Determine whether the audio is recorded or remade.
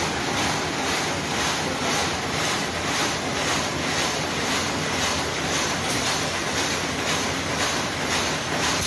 recorded